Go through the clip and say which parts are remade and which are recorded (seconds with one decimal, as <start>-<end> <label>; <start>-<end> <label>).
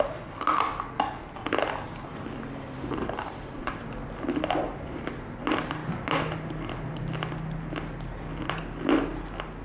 0.0-2.1 recorded; 2.1-3.9 remade; 3.9-9.6 recorded